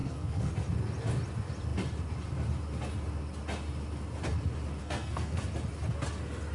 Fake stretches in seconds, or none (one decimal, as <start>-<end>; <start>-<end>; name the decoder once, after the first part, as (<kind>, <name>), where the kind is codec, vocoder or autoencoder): 0.0-0.5 (codec, SNAC); 4.8-5.4